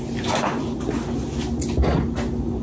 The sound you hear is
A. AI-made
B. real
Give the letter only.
B